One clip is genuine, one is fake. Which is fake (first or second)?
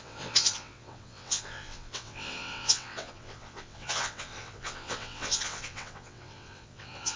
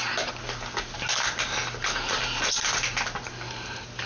first